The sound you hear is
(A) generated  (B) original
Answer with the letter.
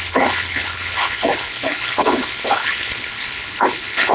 A